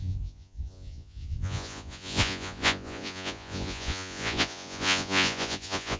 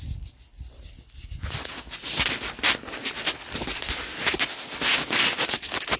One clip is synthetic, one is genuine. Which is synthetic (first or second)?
first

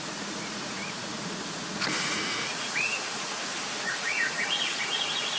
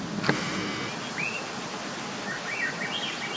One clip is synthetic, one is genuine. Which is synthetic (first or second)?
first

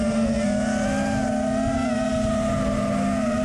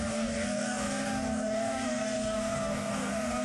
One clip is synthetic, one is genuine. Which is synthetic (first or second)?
second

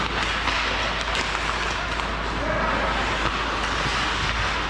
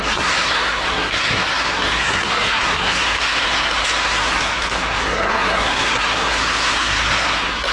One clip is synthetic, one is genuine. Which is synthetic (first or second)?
second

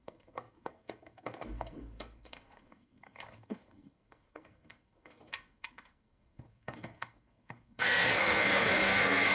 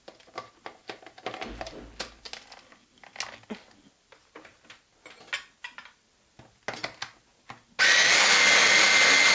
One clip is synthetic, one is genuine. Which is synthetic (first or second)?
first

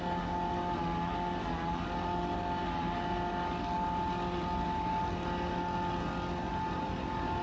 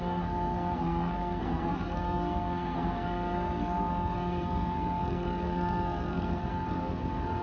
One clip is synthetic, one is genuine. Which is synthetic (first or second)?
second